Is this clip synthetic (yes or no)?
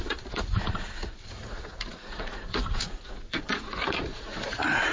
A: yes